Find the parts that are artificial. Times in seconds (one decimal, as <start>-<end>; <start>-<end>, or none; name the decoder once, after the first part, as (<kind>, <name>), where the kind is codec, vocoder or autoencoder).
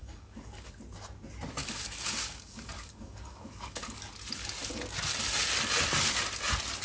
0.0-0.8 (codec, DAC); 1.6-4.1